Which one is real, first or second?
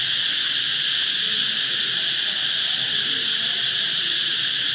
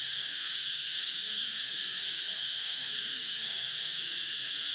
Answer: first